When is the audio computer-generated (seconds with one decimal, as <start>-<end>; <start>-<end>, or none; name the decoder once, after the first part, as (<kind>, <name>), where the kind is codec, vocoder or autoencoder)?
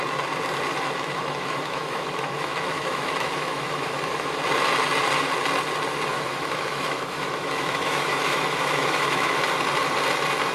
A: 0.7-4.4 (autoencoder, DAC-VAE); 6.1-9.4